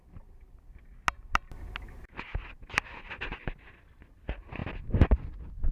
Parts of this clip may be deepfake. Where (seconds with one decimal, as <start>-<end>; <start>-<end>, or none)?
none